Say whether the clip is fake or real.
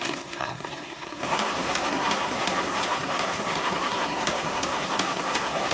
fake